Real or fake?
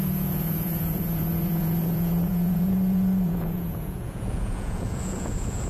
fake